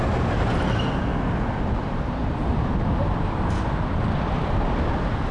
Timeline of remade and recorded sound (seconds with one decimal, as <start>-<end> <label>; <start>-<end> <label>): 0.0-5.3 recorded